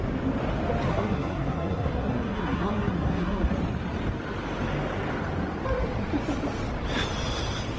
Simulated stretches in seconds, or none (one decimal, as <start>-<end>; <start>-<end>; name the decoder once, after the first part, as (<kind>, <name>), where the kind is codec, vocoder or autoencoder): 0.9-3.5 (codec, SNAC)